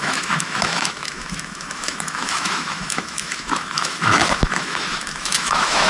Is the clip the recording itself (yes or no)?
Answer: no